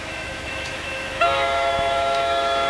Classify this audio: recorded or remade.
remade